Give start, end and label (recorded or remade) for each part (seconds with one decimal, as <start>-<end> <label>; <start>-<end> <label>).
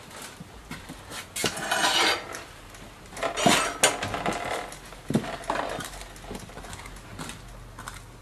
0.0-8.2 recorded